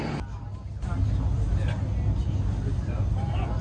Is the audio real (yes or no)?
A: yes